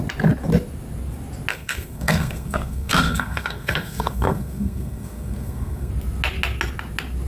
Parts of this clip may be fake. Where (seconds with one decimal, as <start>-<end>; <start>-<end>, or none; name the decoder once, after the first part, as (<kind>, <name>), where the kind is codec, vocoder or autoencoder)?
1.5-5.9 (codec, SNAC)